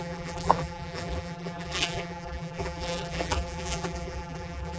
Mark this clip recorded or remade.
remade